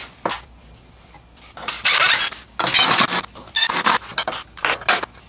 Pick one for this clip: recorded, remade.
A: recorded